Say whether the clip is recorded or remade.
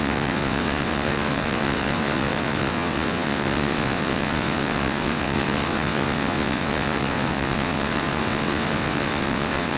remade